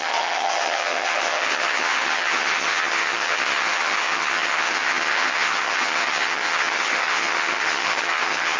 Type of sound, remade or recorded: remade